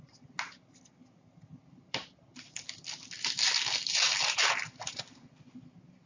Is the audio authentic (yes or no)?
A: yes